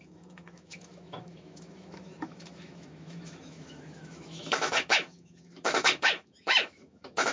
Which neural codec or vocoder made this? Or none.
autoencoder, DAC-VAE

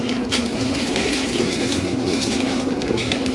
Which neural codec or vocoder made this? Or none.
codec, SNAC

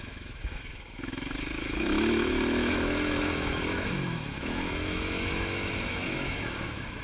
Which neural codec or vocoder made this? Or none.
autoencoder, DAC-VAE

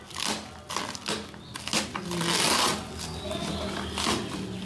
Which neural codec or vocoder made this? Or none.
none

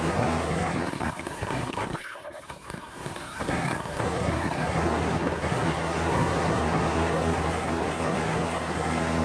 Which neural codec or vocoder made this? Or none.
codec, SNAC